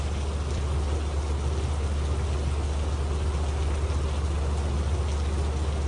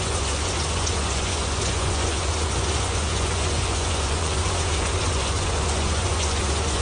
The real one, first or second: first